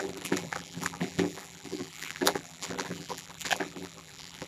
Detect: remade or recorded remade